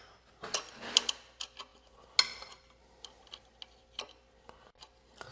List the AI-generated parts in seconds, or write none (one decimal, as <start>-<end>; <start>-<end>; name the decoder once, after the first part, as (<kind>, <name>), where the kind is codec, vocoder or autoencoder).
none